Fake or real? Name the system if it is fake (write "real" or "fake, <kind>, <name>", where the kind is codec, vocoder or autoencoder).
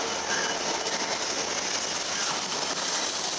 real